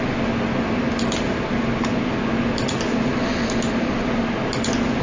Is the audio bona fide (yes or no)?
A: yes